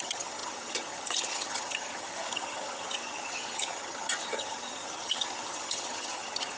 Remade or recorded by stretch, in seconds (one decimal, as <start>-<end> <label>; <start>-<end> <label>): 0.0-6.6 remade